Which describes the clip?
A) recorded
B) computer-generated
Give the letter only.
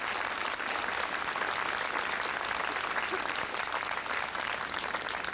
A